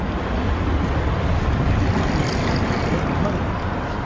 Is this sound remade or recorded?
recorded